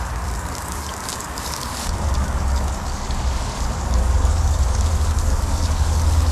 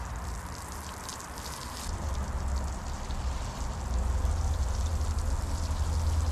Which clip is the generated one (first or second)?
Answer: first